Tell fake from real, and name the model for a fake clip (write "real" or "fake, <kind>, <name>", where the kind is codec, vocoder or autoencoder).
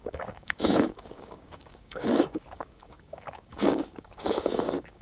fake, codec, DAC